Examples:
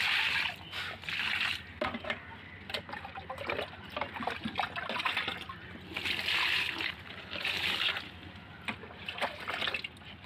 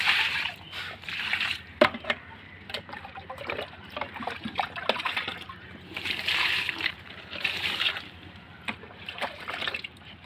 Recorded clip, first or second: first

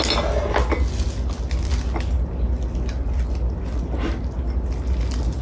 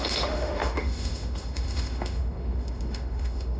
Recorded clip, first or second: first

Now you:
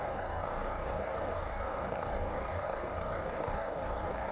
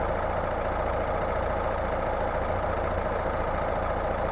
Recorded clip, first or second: second